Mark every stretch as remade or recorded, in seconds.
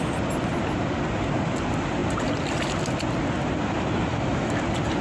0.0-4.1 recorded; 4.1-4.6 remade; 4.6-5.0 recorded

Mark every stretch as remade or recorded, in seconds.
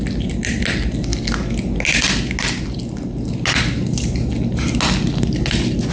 0.0-5.9 recorded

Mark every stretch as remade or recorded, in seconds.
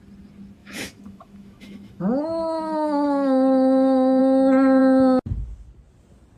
0.0-0.6 recorded; 0.6-4.2 remade; 4.2-6.4 recorded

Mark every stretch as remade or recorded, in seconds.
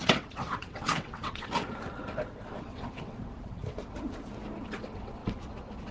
0.0-1.7 remade; 1.7-2.5 recorded; 2.5-3.6 remade; 3.6-4.6 recorded; 4.6-5.9 remade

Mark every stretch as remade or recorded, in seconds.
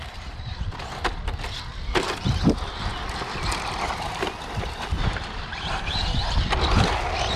0.0-7.4 recorded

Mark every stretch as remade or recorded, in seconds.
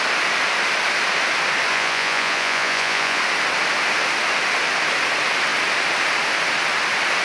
0.0-1.7 recorded; 1.7-3.2 remade; 3.2-7.2 recorded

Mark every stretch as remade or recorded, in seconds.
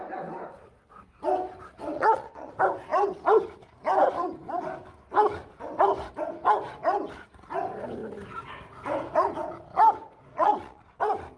0.0-1.9 recorded; 1.9-2.5 remade; 2.5-10.3 recorded; 10.3-11.0 remade; 11.0-11.4 recorded